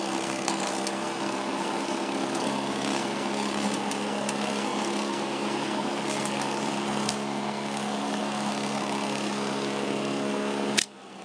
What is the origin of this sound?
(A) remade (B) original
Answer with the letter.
A